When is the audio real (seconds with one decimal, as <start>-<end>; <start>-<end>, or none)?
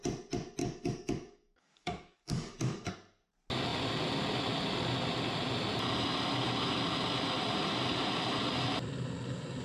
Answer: 0.0-0.6; 2.9-9.6